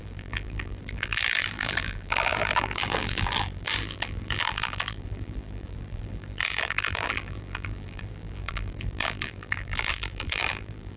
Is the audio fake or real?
fake